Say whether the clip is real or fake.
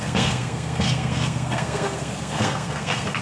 fake